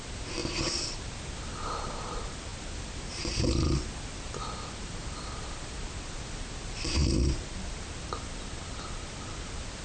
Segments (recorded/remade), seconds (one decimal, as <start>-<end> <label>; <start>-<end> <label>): 0.0-9.8 recorded